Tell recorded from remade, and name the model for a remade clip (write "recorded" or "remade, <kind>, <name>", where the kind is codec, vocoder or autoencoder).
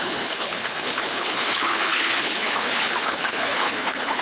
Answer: remade, codec, HILCodec